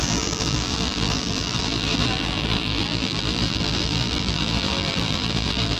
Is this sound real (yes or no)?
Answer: no